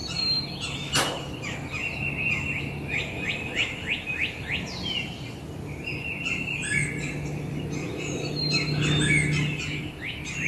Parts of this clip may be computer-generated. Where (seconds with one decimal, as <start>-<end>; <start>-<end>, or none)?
none